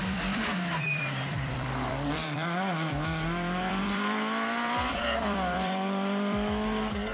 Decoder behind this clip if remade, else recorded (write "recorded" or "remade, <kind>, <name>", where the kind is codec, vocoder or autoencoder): remade, vocoder, BigVGAN v2